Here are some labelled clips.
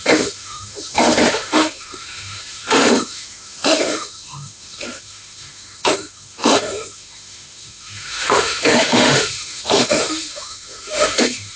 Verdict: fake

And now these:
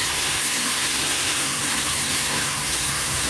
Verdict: fake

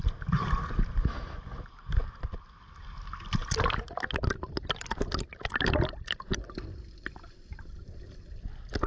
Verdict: real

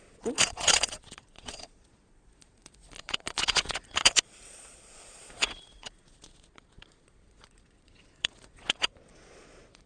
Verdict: fake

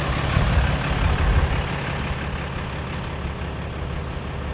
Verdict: real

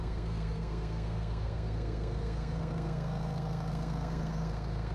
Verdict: fake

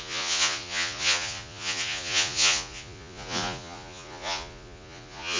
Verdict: fake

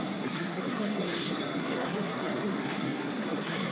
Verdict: fake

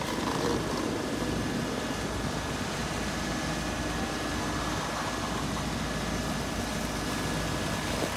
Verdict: real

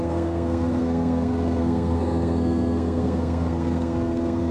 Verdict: fake